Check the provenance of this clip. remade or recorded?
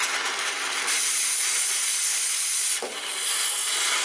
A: recorded